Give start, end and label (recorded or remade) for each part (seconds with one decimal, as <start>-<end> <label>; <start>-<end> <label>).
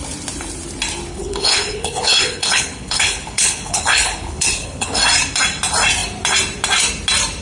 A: 0.0-1.1 recorded; 1.1-5.0 remade; 5.0-7.4 recorded